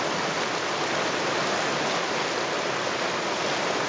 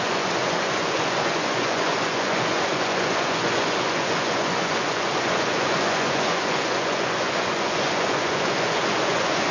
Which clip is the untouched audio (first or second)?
first